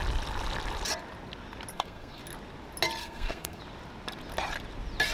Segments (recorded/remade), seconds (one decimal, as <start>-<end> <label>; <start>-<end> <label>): 0.0-1.7 recorded; 1.7-2.2 remade; 2.2-3.0 recorded; 3.0-3.6 remade; 3.6-5.1 recorded